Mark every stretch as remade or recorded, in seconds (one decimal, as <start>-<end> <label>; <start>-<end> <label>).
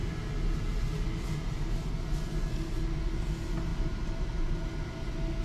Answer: 0.0-3.7 recorded; 3.7-4.6 remade; 4.6-5.4 recorded